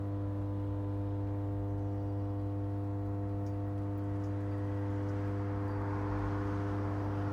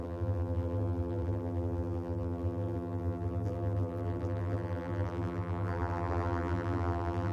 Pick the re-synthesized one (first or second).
second